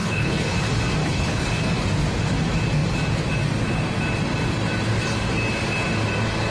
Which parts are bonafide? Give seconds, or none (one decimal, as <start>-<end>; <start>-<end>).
0.6-1.0; 1.5-6.5